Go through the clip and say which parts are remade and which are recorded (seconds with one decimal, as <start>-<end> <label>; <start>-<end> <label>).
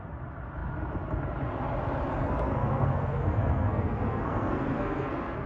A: 0.0-2.2 recorded; 2.2-5.5 remade